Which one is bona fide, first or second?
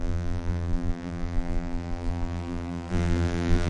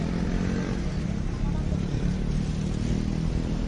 second